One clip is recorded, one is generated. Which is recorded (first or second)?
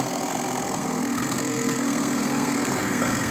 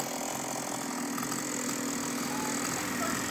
second